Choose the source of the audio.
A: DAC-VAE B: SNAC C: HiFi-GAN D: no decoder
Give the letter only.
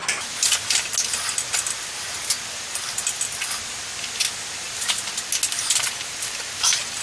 D